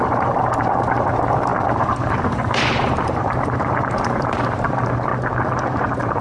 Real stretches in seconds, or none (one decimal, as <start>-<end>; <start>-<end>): 5.1-5.6